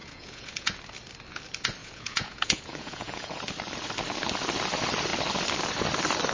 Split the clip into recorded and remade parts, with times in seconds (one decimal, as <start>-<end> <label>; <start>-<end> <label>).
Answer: 0.0-0.7 remade; 0.7-1.8 recorded; 1.8-3.4 remade; 3.4-6.3 recorded